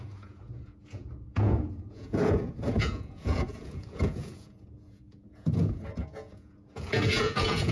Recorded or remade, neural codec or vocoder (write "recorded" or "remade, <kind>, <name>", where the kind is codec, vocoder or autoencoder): remade, vocoder, Vocos